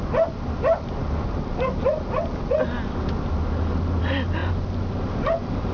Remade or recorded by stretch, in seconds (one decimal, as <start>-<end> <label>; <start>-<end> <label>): 0.0-5.7 recorded

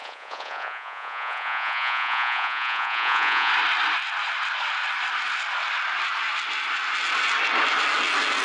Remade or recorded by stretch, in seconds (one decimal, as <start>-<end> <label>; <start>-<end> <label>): 0.0-3.5 remade; 3.5-8.4 recorded

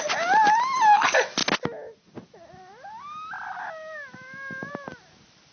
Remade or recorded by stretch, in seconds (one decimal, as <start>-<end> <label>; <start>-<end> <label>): 0.0-5.5 recorded

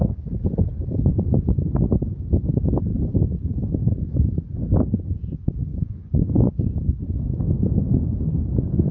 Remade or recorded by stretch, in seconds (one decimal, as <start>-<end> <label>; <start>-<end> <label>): 0.0-5.7 recorded; 5.7-6.5 remade; 6.5-8.9 recorded